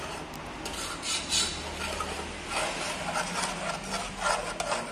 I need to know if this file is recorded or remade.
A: recorded